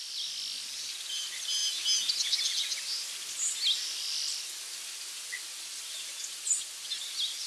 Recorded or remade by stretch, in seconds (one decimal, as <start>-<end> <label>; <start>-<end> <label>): 0.0-7.5 recorded